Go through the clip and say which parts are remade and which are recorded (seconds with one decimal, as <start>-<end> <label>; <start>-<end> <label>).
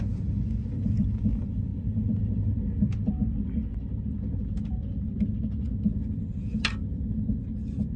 0.0-8.0 recorded